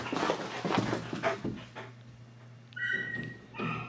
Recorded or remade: recorded